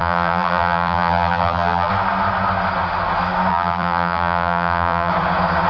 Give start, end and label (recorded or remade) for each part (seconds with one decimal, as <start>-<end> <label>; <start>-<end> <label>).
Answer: 0.0-1.9 remade; 1.9-3.5 recorded; 3.5-5.1 remade; 5.1-5.7 recorded